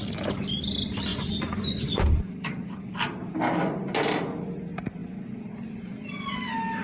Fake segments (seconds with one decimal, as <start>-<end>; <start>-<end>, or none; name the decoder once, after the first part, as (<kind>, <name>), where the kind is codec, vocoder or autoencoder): 1.1-2.3 (vocoder, Vocos)